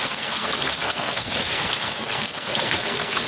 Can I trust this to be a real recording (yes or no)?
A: no